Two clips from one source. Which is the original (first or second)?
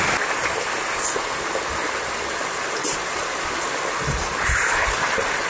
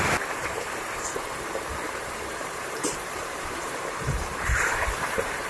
first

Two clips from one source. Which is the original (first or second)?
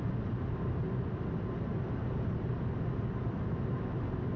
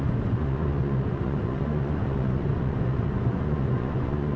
first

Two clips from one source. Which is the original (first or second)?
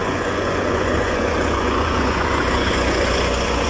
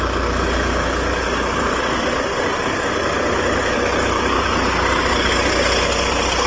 second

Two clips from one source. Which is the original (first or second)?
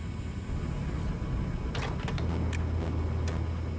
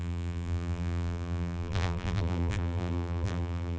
first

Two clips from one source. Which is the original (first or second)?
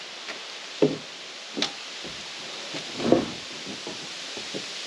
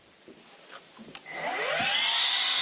second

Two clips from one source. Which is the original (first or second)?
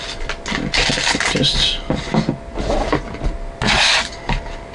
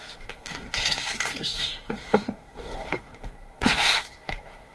first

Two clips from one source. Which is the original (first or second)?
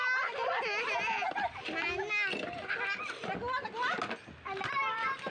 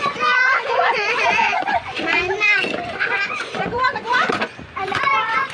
first